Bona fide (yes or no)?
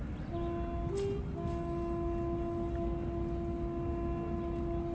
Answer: yes